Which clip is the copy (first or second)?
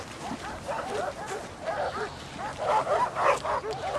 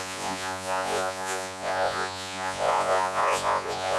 second